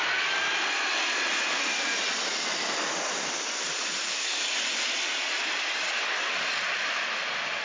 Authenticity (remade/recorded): recorded